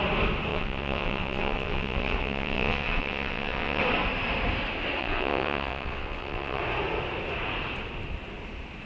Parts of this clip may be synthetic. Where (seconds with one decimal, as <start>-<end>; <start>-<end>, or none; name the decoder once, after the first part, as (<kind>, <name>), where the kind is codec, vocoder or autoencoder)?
0.5-3.8 (vocoder, WaveNeXt); 5.0-6.6